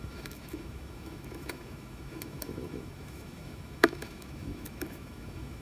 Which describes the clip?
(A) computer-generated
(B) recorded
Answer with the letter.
A